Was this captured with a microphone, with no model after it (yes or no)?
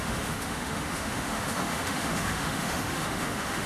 no